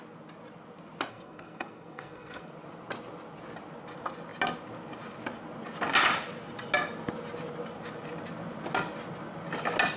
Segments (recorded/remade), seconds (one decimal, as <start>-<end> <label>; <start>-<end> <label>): 0.0-1.1 recorded; 1.1-2.5 remade; 2.5-10.0 recorded